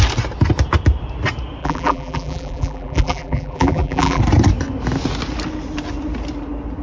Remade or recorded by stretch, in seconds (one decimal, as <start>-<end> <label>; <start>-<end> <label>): 0.0-1.6 recorded; 1.6-4.2 remade; 4.2-6.8 recorded